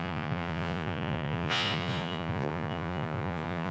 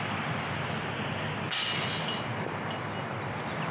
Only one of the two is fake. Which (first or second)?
first